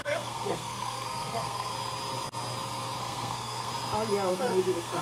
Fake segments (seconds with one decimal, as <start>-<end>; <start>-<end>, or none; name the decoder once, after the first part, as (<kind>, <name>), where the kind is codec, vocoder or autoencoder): 0.0-1.7 (codec, SNAC); 3.0-3.7; 4.3-5.0